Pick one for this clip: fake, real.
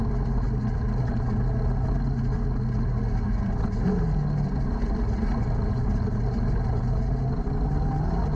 real